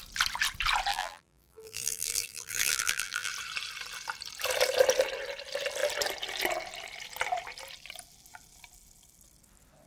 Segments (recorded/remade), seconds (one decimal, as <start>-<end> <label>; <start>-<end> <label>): 0.0-0.9 recorded; 0.9-3.3 remade; 3.3-9.9 recorded